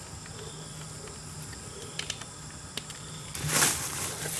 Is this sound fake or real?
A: real